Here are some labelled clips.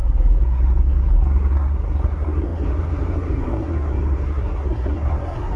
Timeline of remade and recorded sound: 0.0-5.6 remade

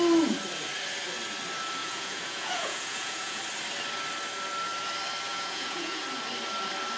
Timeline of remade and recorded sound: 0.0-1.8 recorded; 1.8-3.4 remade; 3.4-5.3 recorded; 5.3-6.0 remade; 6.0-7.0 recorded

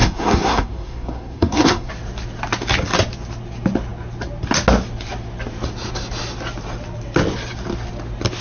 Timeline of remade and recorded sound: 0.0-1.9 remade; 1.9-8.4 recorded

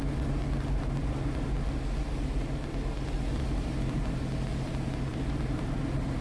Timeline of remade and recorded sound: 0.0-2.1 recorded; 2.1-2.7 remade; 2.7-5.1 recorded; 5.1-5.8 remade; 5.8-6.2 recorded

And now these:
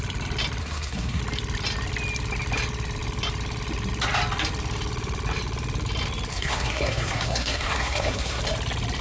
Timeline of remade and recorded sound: 0.0-0.6 recorded; 0.6-1.2 remade; 1.2-6.3 recorded; 6.3-8.4 remade; 8.4-9.0 recorded

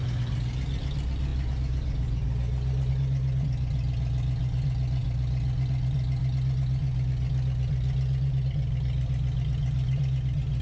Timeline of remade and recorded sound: 0.0-10.6 recorded

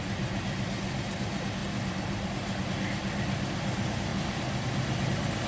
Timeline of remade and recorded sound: 0.0-5.5 recorded